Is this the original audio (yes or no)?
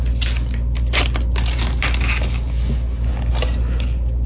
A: yes